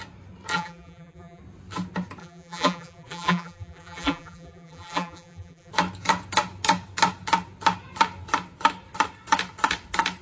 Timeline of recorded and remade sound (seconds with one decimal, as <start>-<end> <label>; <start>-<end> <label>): 0.0-0.5 recorded; 0.5-1.4 remade; 1.4-2.2 recorded; 2.2-5.7 remade; 5.7-10.2 recorded